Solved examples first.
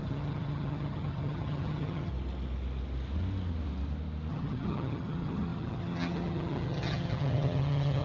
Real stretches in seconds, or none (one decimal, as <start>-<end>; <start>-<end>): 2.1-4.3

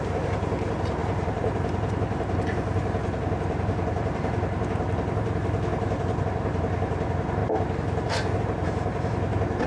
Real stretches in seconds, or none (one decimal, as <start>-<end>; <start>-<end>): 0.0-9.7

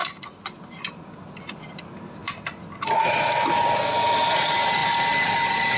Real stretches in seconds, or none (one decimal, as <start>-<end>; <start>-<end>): 0.0-5.8

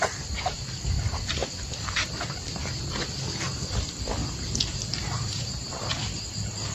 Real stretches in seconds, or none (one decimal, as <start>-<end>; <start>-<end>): 0.0-4.2; 5.9-6.7

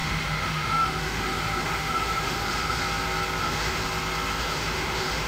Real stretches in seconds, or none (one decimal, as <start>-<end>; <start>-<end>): 2.8-3.4; 3.8-4.4

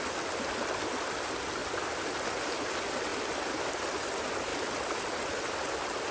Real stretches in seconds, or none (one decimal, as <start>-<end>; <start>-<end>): 0.0-6.1